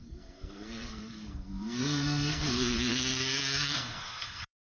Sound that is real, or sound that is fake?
fake